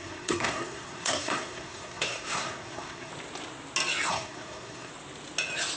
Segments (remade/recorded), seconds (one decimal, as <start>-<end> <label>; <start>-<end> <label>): 0.0-3.1 remade; 3.1-4.1 recorded; 4.1-4.9 remade; 4.9-5.8 recorded